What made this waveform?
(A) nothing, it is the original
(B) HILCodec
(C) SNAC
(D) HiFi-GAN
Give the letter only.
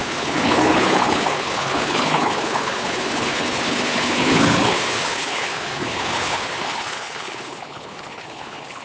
B